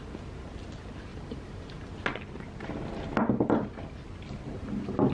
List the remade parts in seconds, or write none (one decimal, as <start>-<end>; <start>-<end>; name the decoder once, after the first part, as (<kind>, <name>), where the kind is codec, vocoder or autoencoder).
1.1-1.8 (vocoder, BigVGAN v2)